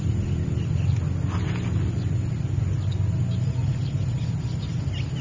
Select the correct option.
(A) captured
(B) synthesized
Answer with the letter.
A